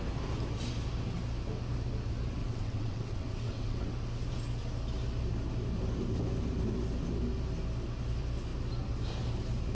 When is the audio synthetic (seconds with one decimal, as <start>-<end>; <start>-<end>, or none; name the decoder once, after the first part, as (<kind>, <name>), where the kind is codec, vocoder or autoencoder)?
2.4-3.9 (vocoder, WaveNeXt)